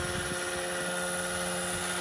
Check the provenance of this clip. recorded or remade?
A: recorded